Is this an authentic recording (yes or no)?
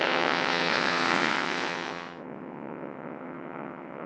no